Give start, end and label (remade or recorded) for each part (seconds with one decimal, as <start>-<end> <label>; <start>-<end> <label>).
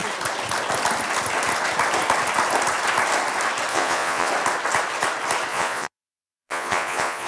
0.0-3.7 recorded; 3.7-4.3 remade; 4.3-5.5 recorded; 5.5-7.3 remade